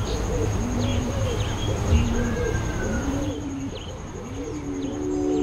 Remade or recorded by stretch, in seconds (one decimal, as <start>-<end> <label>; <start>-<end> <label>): 0.0-0.9 recorded; 0.9-4.1 remade; 4.1-5.4 recorded